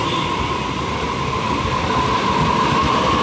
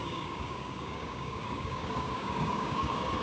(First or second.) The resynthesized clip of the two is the second